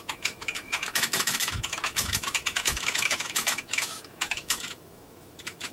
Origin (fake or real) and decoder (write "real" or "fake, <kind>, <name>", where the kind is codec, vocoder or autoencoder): fake, autoencoder, DAC-VAE